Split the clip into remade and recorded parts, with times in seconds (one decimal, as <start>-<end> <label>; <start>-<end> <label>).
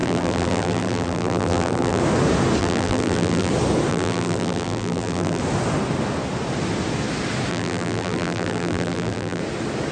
0.0-2.0 remade; 2.0-2.6 recorded; 2.6-3.5 remade; 3.5-3.9 recorded; 3.9-5.4 remade; 5.4-7.5 recorded; 7.5-9.4 remade; 9.4-9.9 recorded